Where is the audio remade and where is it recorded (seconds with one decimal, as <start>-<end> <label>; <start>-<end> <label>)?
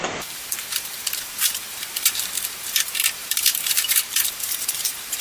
0.0-5.2 remade